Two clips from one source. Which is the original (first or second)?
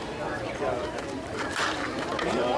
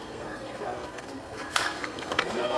first